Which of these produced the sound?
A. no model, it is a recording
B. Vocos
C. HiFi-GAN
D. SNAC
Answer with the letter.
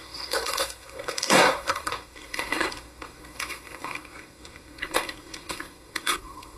D